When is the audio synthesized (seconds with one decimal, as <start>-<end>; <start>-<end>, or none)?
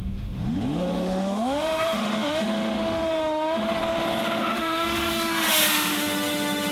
0.0-3.8; 4.5-6.7